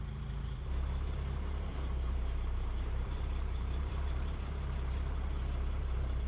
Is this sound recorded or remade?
remade